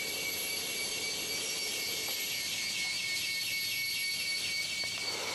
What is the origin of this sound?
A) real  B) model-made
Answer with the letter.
A